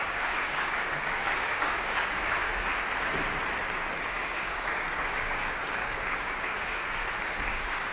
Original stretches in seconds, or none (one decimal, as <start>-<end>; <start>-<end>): 2.7-4.1; 7.0-7.5